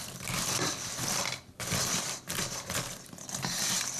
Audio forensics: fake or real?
real